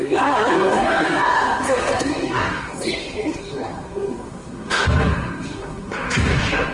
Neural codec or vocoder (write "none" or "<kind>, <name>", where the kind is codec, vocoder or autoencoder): codec, SNAC